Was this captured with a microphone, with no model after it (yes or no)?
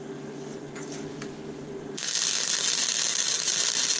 yes